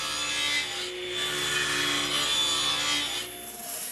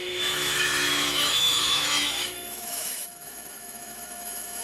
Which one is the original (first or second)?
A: first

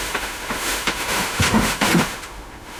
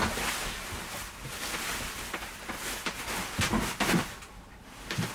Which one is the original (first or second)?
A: second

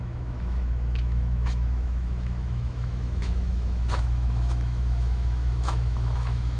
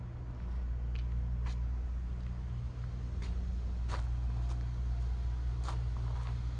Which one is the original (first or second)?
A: second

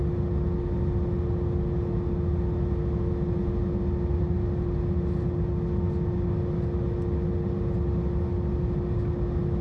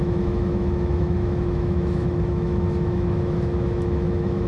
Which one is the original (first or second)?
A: first